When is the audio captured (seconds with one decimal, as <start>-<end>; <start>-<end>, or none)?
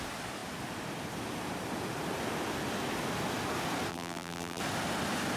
0.0-3.9; 4.6-5.4